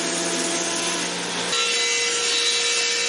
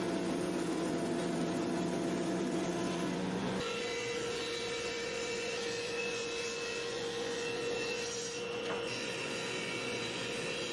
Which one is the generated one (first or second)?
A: second